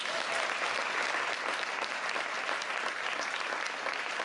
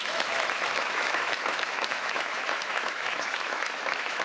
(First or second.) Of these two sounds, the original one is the first